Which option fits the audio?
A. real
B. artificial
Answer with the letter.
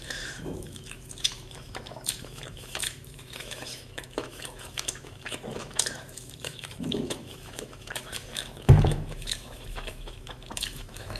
B